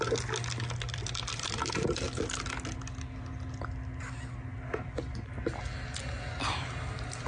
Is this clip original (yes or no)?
yes